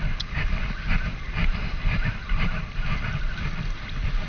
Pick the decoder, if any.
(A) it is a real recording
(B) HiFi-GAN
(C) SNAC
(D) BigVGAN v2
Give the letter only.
A